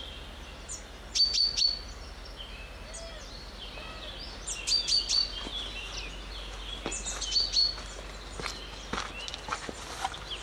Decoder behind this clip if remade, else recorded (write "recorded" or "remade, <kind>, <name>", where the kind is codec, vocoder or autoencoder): recorded